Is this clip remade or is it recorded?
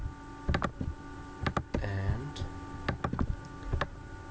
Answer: recorded